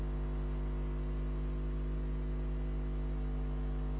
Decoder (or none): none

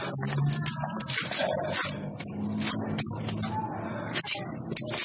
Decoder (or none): none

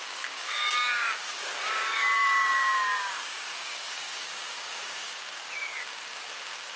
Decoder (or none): codec, DAC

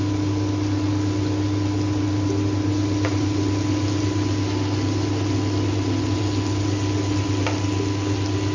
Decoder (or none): none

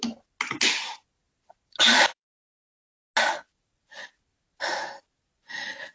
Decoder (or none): none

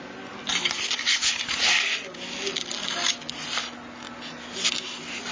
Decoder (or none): none